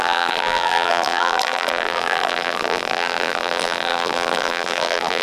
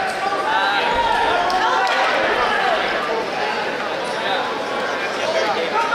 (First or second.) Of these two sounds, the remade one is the first